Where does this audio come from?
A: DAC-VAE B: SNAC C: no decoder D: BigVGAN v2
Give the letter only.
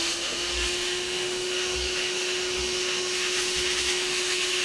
A